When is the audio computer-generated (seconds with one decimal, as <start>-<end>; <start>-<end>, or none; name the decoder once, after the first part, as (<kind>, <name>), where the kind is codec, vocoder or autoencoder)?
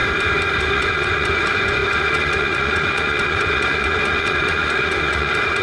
0.6-5.6 (vocoder, Vocos)